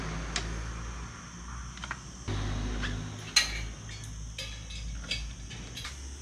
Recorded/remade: recorded